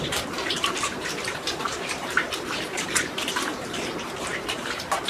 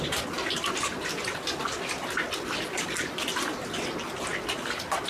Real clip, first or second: second